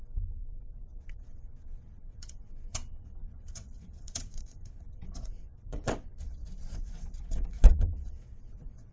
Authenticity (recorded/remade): remade